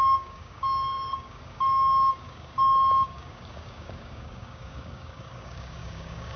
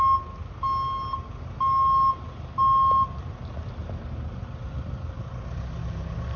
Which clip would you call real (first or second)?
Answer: second